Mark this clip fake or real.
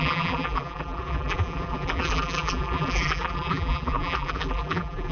fake